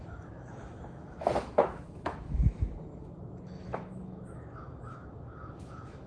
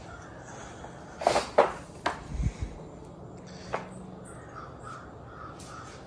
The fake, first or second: first